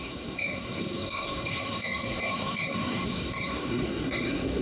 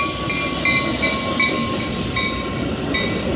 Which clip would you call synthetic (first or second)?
first